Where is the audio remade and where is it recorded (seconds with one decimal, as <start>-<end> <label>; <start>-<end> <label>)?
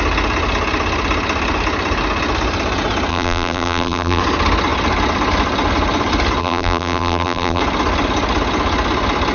0.0-3.1 recorded; 3.1-4.2 remade; 4.2-6.4 recorded; 6.4-7.6 remade; 7.6-9.3 recorded